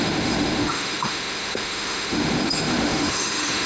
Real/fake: fake